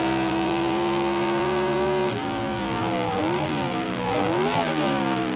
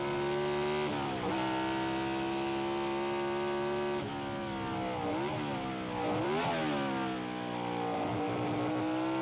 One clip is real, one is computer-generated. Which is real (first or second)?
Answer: second